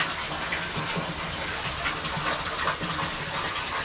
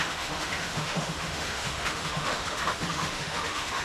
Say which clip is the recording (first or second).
first